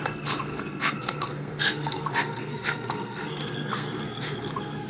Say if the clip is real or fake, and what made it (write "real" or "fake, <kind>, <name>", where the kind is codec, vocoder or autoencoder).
fake, codec, SNAC